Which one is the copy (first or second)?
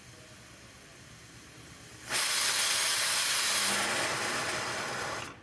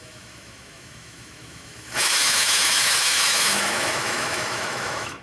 second